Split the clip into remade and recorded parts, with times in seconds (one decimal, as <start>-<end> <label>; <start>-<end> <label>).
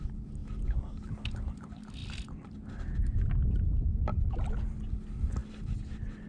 0.0-6.3 recorded